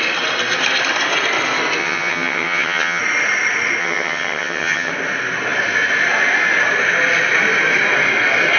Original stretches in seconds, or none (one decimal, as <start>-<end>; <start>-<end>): 0.0-1.8; 3.0-3.8; 4.9-8.6